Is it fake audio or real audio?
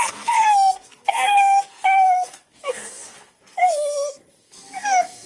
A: fake